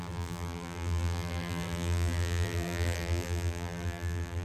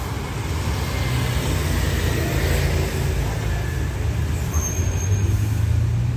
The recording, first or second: second